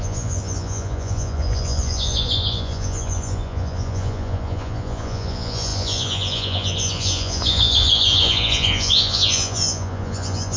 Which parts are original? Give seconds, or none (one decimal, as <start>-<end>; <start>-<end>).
none